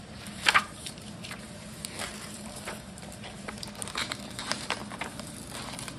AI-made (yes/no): yes